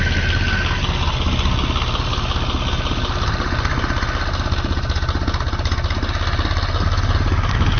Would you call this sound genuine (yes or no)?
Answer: yes